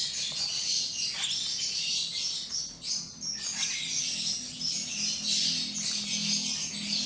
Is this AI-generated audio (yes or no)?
no